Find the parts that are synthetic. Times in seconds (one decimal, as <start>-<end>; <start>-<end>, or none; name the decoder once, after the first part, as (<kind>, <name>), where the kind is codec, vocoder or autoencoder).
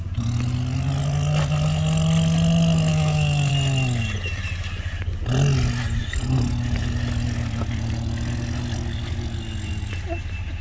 2.9-3.5 (codec, DAC)